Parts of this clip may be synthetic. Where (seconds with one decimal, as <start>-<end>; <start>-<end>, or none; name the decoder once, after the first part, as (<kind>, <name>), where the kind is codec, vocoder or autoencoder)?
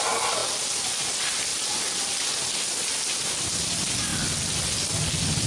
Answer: none